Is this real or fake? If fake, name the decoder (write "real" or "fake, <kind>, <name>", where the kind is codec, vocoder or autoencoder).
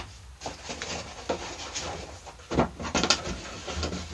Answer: real